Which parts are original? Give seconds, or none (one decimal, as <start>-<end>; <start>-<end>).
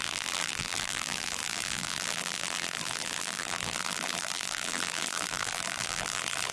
none